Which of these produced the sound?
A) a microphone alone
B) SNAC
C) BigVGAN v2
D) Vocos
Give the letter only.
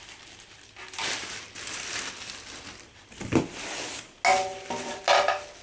A